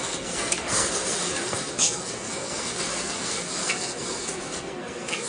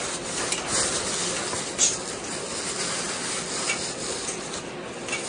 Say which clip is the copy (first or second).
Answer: first